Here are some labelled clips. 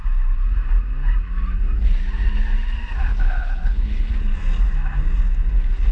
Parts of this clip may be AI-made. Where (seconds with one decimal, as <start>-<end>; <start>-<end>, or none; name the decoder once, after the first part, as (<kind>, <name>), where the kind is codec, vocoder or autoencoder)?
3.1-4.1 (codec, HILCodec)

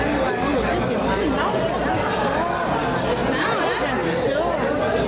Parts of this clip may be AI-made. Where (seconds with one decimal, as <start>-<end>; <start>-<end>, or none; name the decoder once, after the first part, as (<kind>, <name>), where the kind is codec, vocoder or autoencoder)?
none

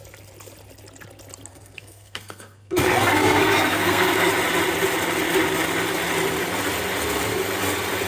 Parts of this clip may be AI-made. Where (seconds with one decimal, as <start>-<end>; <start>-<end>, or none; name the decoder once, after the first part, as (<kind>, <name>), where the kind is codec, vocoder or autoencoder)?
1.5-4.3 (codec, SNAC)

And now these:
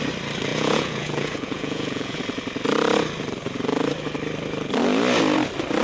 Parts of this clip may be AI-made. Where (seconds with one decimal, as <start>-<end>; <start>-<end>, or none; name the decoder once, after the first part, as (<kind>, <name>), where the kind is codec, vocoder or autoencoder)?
0.5-2.2 (vocoder, Vocos)

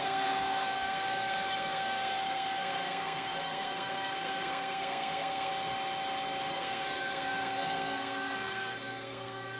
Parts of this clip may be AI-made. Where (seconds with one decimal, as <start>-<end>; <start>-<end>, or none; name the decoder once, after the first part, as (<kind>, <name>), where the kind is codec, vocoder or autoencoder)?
0.0-5.5 (codec, SNAC); 6.5-9.6

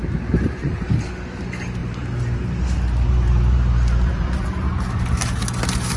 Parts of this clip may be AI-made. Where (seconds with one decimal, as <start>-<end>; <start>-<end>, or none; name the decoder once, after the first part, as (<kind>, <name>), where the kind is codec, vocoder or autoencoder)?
0.0-1.0 (vocoder, BigVGAN v2); 1.8-5.4

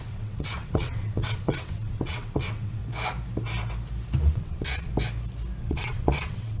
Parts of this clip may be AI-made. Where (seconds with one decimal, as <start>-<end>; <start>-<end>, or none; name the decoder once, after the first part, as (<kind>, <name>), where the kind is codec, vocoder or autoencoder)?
0.0-2.8 (vocoder, WaveNeXt); 4.2-4.9; 5.6-6.6

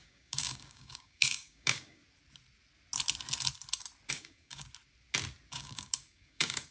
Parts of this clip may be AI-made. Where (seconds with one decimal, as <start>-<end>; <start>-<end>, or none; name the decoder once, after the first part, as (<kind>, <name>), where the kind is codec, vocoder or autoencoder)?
0.0-2.0 (codec, DAC); 4.1-4.6; 5.5-6.7